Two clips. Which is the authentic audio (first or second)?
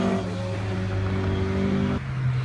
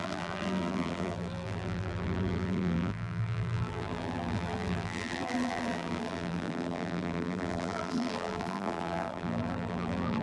first